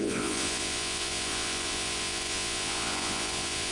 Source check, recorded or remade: remade